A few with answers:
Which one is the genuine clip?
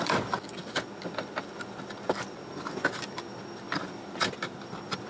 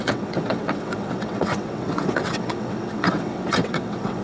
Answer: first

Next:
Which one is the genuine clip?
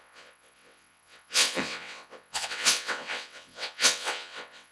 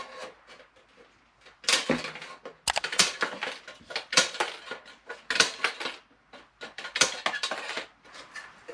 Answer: second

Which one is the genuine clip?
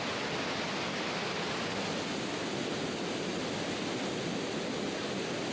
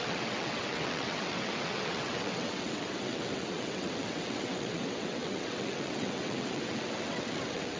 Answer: first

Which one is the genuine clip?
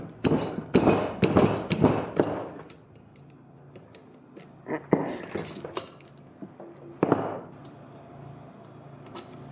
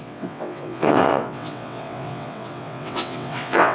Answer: first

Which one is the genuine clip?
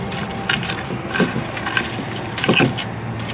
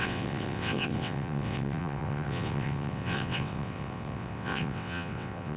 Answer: first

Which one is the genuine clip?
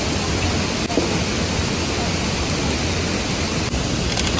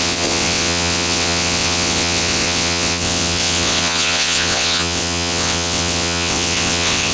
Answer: first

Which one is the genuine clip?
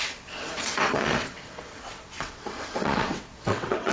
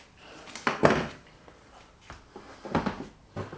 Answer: second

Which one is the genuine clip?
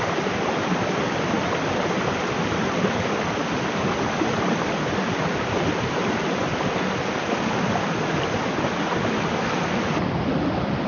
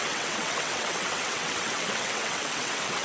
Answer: first